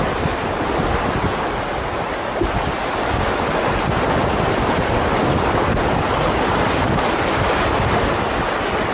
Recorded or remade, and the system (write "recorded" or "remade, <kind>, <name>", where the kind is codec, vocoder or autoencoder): recorded